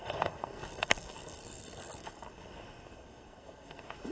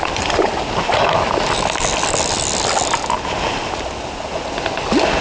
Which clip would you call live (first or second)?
second